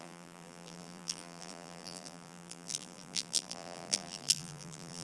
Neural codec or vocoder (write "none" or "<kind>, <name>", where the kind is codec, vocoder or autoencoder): vocoder, BigVGAN v2